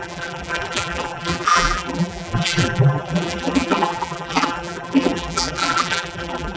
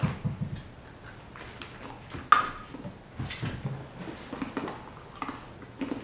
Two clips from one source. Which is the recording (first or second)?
second